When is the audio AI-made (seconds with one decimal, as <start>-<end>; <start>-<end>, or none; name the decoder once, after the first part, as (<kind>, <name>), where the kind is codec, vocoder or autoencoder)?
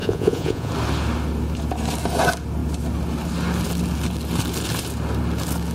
0.0-0.7 (vocoder, Vocos)